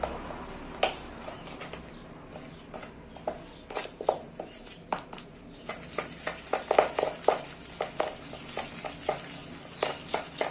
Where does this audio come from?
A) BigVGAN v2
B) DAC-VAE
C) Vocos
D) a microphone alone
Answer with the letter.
D